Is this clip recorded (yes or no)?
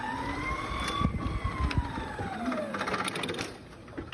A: no